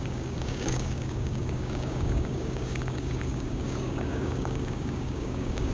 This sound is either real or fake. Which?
fake